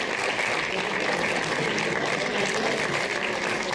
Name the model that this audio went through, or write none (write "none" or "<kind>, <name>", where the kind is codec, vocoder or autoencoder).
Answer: none